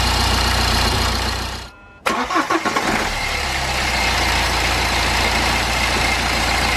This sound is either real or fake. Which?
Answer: fake